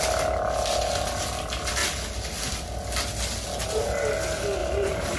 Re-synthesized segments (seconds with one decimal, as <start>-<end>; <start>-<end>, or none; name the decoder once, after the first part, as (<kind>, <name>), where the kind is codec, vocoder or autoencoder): 4.6-5.2 (vocoder, BigVGAN v2)

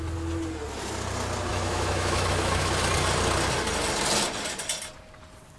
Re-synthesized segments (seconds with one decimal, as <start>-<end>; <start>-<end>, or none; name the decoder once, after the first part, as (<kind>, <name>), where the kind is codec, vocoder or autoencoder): 1.5-2.7 (autoencoder, DAC-VAE)